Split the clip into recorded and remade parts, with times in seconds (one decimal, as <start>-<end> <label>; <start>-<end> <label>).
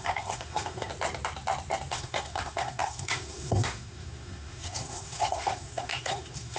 0.0-0.9 remade; 0.9-1.9 recorded; 1.9-6.6 remade